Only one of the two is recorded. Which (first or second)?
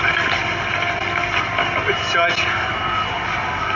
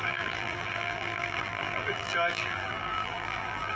first